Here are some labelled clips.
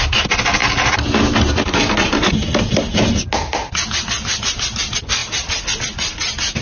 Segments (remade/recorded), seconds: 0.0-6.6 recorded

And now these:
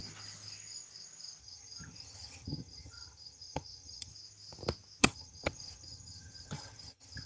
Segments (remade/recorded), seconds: 0.0-1.4 recorded; 1.4-4.1 remade; 4.1-5.0 recorded; 5.0-7.3 remade

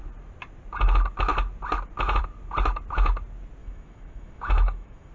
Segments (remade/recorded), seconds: 0.0-3.6 recorded; 3.6-5.1 remade

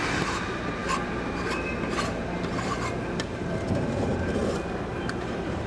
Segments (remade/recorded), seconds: 0.0-0.8 remade; 0.8-2.5 recorded; 2.5-4.4 remade; 4.4-4.9 recorded; 4.9-5.7 remade

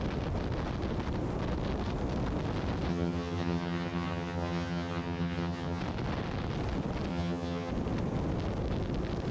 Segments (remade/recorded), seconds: 0.0-2.9 recorded; 2.9-5.8 remade; 5.8-7.1 recorded; 7.1-7.7 remade; 7.7-9.3 recorded

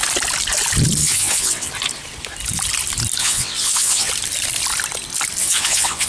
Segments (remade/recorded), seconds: 0.0-1.0 recorded; 1.0-1.7 remade; 1.7-3.2 recorded; 3.2-4.1 remade; 4.1-5.4 recorded; 5.4-6.1 remade

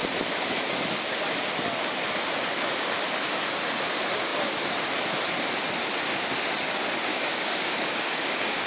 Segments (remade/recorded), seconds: 0.0-7.1 recorded; 7.1-8.7 remade

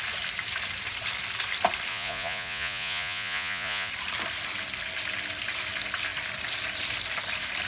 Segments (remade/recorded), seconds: 0.0-1.9 recorded; 1.9-3.9 remade; 3.9-7.7 recorded